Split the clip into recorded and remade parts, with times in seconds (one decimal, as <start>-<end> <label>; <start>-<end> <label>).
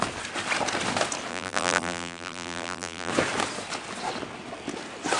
0.0-1.3 recorded; 1.3-3.1 remade; 3.1-5.2 recorded